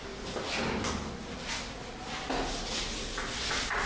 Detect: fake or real real